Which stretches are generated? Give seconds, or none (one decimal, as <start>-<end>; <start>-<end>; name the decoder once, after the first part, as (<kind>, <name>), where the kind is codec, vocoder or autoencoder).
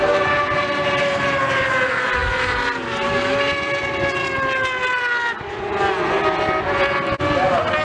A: none